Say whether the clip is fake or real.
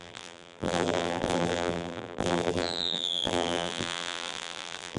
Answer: fake